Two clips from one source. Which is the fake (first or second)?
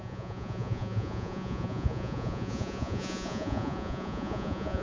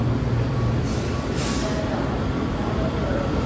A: first